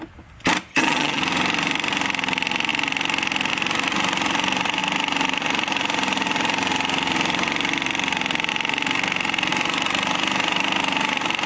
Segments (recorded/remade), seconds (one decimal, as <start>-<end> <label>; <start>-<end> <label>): 0.0-0.7 recorded; 0.7-1.2 remade; 1.2-11.5 recorded